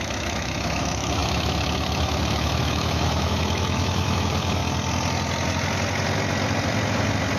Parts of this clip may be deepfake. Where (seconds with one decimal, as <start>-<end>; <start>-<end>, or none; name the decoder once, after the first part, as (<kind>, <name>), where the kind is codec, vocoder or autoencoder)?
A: 0.0-4.6 (autoencoder, DAC-VAE)